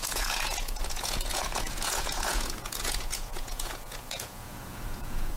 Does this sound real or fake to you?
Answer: fake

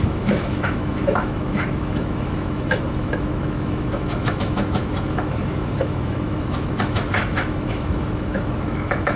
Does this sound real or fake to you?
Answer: fake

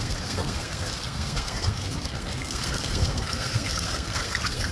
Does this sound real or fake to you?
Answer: fake